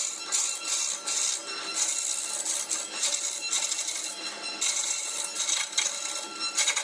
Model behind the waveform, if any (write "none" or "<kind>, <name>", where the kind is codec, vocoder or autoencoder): none